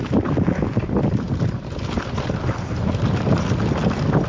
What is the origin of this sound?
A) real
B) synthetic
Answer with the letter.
A